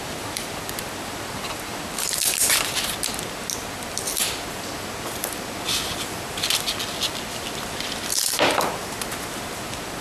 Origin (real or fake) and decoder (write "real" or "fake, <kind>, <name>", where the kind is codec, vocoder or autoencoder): real